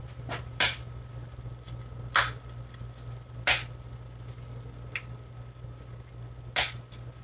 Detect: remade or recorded recorded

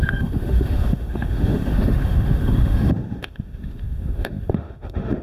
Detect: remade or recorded remade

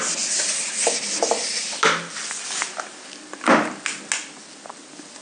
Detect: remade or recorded recorded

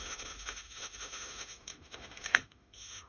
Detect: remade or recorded remade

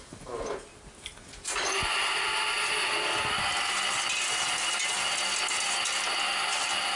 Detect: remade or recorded recorded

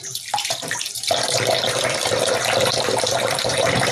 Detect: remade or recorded remade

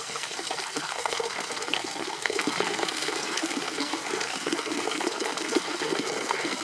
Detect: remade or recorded remade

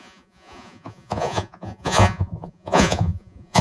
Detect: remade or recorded remade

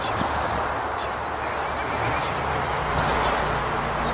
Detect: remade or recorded recorded